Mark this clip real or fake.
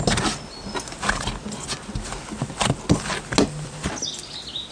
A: real